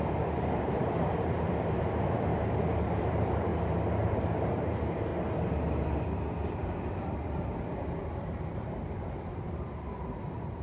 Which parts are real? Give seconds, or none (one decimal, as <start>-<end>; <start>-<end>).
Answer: 3.5-4.2; 5.1-6.9